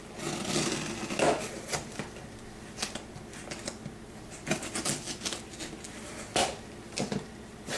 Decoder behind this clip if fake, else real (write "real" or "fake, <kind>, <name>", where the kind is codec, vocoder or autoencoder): real